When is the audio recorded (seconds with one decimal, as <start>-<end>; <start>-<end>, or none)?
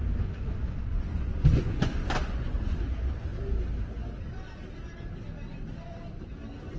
0.0-0.9; 2.8-6.8